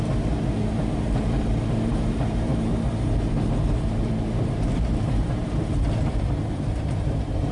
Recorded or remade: remade